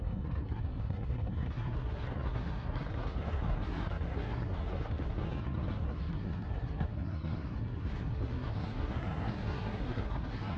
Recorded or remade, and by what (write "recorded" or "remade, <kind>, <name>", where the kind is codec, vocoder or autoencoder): remade, codec, SNAC